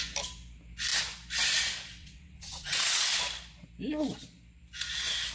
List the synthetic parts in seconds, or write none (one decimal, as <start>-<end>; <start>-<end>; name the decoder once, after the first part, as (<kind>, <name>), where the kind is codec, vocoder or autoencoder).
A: 2.0-3.1 (vocoder, WaveNeXt)